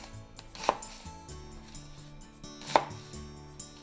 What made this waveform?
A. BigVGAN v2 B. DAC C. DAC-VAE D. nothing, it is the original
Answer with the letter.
D